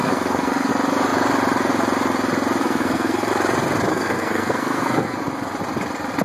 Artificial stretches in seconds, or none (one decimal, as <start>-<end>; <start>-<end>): 0.0-0.7; 2.6-3.3; 3.9-5.2